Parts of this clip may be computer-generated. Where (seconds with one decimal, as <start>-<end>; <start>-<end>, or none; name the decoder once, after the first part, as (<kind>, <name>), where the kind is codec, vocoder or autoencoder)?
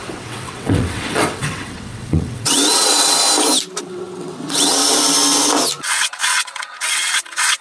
0.0-3.2 (vocoder, WaveNeXt); 3.8-4.8; 5.8-7.6